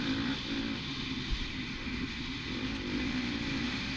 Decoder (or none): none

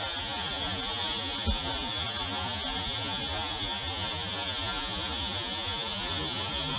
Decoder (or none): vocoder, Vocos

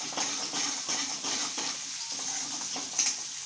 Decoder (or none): none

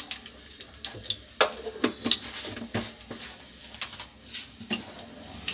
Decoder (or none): none